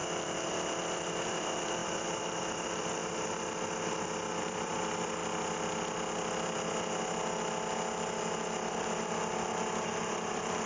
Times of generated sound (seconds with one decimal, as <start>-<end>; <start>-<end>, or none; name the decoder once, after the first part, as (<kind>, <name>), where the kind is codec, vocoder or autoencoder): 0.0-3.0 (vocoder, BigVGAN v2); 4.4-5.2; 10.1-10.7